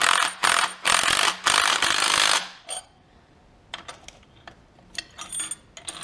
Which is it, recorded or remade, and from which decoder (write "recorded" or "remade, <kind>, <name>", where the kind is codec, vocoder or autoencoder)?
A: recorded